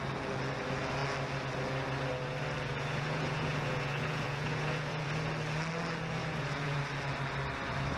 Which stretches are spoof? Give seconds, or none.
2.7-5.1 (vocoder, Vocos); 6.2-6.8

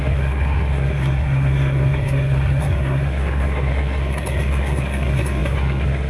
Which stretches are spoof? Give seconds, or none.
0.0-6.1 (codec, SNAC)

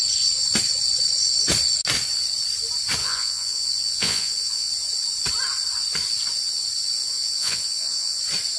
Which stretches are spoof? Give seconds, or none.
3.0-4.7 (vocoder, Vocos); 7.0-8.2

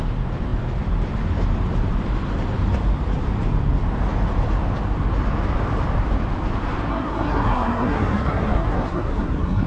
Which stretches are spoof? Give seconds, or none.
6.9-9.7 (codec, SNAC)